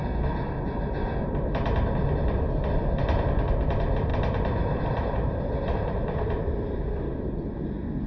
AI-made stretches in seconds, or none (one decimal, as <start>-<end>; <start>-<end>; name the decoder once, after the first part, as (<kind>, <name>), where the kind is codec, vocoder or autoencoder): 4.1-6.4 (vocoder, BigVGAN v2)